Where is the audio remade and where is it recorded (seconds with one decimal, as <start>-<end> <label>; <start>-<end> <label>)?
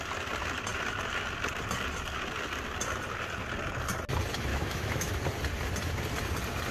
0.0-4.5 recorded; 4.5-5.1 remade; 5.1-6.7 recorded